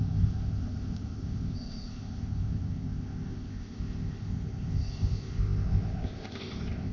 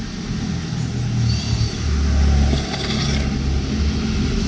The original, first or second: second